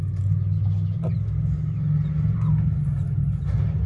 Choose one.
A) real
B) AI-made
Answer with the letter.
A